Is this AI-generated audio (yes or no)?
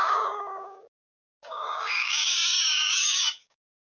yes